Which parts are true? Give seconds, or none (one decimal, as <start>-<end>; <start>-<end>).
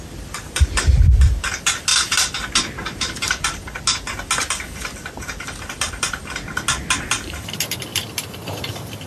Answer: 0.0-7.9